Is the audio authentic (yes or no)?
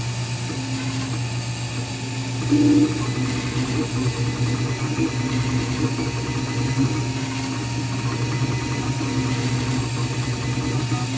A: yes